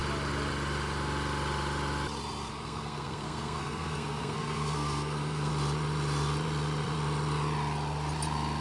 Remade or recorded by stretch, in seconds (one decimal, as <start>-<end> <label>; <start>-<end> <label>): 0.0-2.5 recorded; 2.5-5.5 remade; 5.5-8.6 recorded